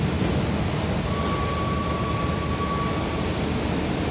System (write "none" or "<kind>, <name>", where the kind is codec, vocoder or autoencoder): none